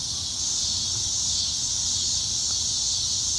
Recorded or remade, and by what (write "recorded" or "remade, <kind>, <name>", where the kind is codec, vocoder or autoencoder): recorded